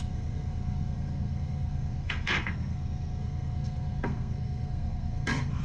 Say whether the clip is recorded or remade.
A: remade